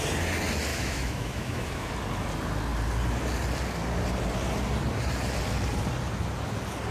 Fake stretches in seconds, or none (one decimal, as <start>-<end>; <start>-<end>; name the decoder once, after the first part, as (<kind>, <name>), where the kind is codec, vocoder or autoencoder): 0.7-1.9 (autoencoder, DAC-VAE)